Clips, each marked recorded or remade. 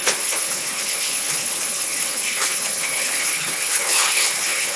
remade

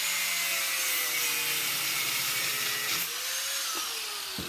recorded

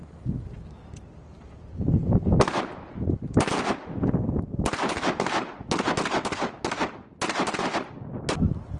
recorded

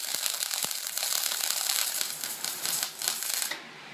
remade